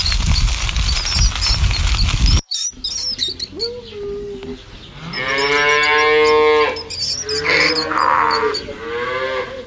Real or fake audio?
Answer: real